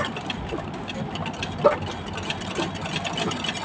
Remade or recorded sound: recorded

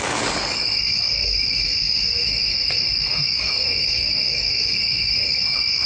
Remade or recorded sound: remade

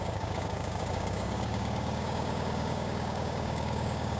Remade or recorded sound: remade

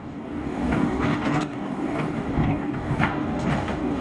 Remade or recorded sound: remade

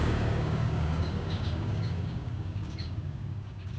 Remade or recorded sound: remade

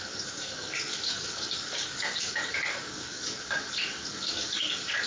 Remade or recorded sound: remade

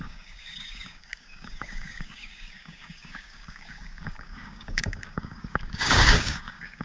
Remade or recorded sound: remade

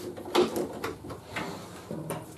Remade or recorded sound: recorded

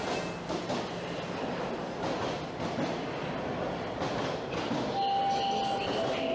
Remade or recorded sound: recorded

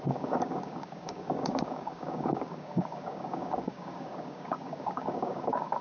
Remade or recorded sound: remade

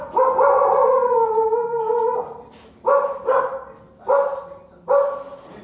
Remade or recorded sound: recorded